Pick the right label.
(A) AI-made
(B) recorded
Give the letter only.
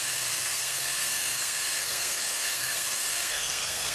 A